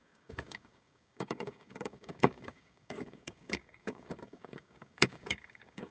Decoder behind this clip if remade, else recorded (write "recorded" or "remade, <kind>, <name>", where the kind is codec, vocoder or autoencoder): remade, codec, DAC